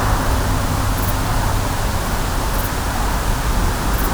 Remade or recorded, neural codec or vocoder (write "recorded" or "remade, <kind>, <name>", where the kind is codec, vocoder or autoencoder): recorded